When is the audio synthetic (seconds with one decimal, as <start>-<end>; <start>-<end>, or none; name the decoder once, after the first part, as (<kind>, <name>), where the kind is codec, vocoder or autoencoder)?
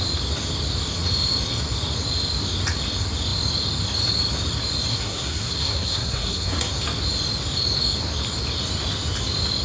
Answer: 4.9-6.7 (codec, SNAC)